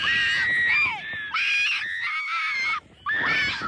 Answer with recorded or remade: recorded